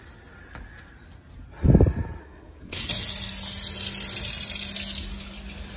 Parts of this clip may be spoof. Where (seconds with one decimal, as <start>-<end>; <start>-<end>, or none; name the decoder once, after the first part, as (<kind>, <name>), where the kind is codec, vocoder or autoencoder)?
2.2-2.8 (codec, SNAC)